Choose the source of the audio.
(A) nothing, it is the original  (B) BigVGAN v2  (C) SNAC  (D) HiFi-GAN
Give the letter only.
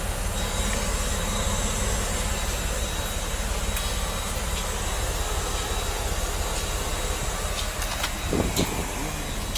A